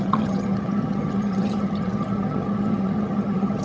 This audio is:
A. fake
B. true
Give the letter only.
A